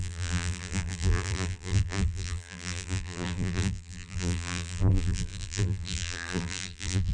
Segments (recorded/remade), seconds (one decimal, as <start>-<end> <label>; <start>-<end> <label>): 0.0-7.1 remade